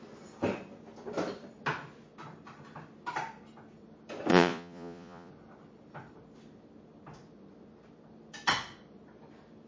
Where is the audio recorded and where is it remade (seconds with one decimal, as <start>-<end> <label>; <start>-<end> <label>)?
0.0-4.3 recorded; 4.3-5.3 remade; 5.3-9.7 recorded